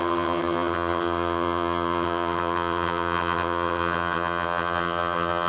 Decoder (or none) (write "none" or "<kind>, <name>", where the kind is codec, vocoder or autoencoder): vocoder, HiFi-GAN